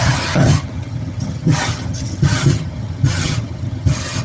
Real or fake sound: fake